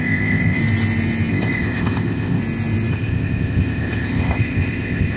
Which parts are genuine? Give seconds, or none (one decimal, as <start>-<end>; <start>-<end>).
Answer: 0.6-1.3; 2.4-2.9